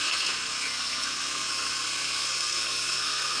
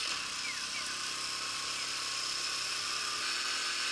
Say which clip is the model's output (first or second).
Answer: first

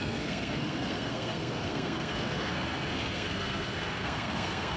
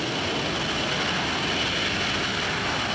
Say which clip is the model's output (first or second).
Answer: first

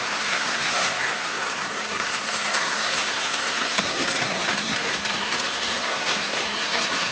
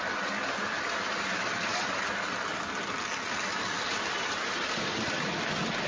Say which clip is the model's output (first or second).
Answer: first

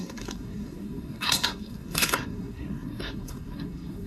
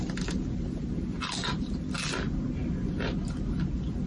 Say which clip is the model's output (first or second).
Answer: first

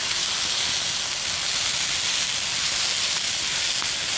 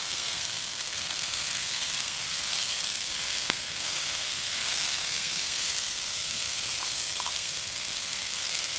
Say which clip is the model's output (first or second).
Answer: second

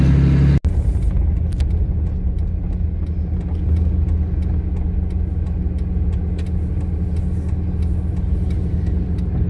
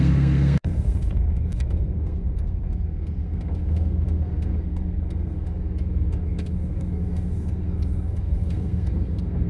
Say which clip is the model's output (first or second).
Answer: second